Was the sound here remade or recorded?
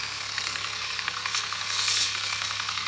remade